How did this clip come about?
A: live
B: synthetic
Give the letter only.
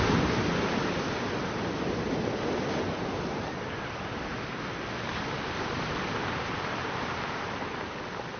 A